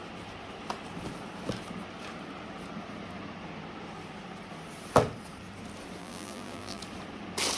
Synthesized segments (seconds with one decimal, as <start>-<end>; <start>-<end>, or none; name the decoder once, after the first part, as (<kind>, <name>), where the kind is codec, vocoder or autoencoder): 6.0-6.8 (vocoder, BigVGAN v2)